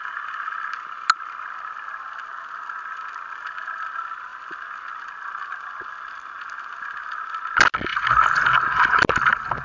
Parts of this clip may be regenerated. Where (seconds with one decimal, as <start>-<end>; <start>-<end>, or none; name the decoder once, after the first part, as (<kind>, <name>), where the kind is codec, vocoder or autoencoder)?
none